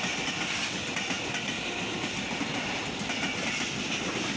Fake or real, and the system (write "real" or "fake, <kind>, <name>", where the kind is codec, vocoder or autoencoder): real